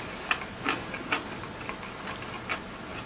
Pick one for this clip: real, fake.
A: real